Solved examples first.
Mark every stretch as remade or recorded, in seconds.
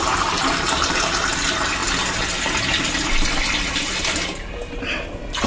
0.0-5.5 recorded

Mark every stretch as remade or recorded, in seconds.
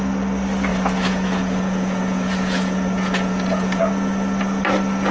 0.0-0.7 recorded; 0.7-3.8 remade; 3.8-5.1 recorded